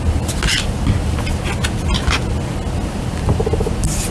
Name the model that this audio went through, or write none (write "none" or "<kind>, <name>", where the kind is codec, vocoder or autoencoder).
none